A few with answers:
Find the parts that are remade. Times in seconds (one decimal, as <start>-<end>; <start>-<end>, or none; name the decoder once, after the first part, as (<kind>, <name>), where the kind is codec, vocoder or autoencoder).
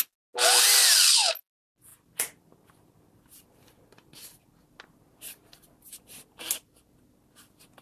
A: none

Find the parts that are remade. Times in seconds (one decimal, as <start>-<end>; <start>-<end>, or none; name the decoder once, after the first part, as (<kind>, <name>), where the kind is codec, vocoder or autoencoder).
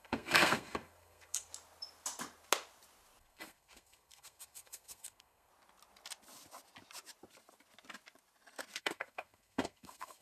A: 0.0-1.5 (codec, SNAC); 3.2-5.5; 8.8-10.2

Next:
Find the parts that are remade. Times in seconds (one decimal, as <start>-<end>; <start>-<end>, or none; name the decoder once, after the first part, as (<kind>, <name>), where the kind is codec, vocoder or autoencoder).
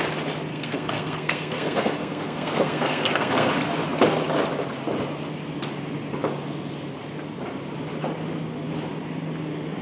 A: 0.5-3.5 (codec, SNAC)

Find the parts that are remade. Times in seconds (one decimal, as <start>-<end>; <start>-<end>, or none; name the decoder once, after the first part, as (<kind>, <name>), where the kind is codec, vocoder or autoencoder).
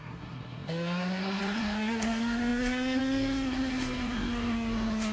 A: 0.0-5.1 (codec, SNAC)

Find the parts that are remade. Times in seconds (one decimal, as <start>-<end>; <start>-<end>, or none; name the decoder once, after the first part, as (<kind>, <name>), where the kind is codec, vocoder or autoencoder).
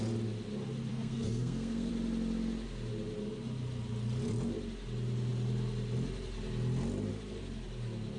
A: 0.9-1.9 (codec, SNAC)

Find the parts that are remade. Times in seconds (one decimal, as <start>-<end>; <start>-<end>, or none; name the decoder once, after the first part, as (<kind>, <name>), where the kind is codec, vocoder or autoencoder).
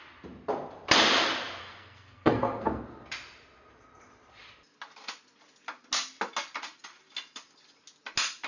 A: 1.6-2.8 (codec, SNAC)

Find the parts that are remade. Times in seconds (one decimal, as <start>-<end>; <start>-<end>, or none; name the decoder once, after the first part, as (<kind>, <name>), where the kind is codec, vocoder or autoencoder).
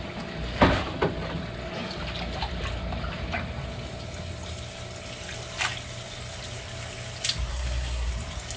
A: 7.5-8.1 (codec, SNAC)